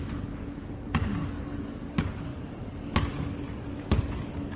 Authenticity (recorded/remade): remade